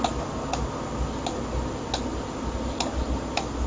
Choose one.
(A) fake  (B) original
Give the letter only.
B